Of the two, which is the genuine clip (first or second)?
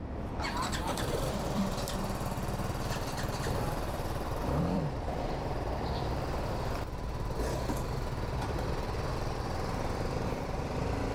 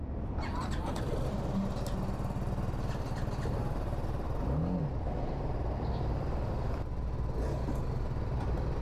second